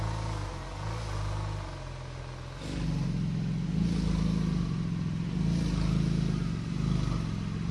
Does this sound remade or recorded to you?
recorded